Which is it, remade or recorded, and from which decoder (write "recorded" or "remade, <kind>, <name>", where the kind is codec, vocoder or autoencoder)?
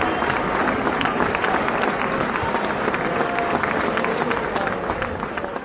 recorded